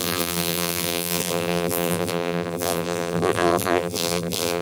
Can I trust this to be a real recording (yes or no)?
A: no